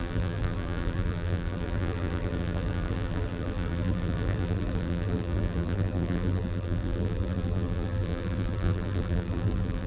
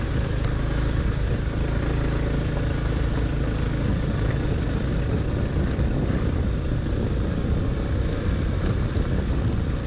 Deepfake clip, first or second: first